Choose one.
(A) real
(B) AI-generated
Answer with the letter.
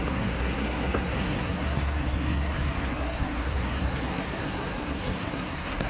B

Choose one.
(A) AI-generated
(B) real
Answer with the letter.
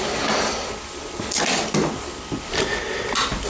B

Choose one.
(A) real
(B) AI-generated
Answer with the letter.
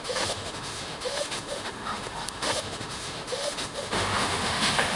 B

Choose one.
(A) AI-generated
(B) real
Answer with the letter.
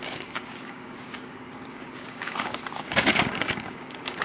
A